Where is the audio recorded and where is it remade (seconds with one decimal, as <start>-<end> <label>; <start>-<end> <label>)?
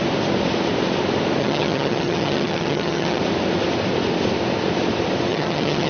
0.0-1.4 recorded; 1.4-3.2 remade; 3.2-5.3 recorded; 5.3-5.9 remade